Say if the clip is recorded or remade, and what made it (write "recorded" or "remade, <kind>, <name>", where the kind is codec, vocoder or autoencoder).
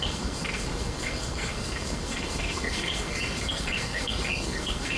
remade, codec, SNAC